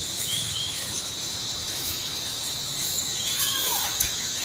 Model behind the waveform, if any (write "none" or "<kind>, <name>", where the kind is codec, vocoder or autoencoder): autoencoder, DAC-VAE